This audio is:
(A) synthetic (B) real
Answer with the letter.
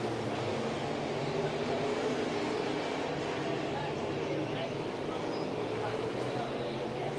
B